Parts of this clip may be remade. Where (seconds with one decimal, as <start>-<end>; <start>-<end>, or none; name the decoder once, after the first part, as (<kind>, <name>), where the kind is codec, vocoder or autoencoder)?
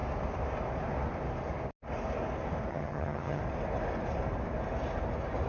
2.7-3.4 (vocoder, HiFi-GAN)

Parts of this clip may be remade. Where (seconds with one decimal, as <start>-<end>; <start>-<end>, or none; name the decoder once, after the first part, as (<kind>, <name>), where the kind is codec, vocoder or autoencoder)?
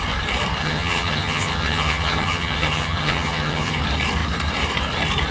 0.6-3.8 (vocoder, HiFi-GAN)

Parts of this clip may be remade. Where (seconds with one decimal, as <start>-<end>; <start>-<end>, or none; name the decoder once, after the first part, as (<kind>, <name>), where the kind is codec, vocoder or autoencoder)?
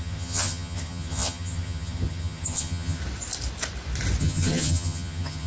0.0-3.0 (vocoder, HiFi-GAN); 4.2-5.5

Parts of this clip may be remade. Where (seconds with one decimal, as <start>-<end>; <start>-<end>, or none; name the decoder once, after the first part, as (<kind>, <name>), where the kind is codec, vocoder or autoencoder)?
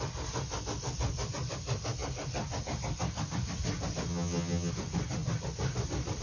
4.1-4.7 (vocoder, HiFi-GAN)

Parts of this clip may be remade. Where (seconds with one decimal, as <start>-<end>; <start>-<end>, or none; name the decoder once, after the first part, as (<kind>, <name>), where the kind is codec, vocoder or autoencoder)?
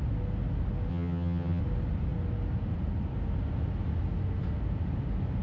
0.9-1.6 (vocoder, HiFi-GAN)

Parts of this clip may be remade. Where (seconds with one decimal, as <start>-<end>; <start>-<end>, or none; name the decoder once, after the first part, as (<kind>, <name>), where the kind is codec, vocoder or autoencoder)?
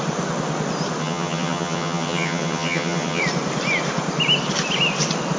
1.0-3.2 (vocoder, HiFi-GAN)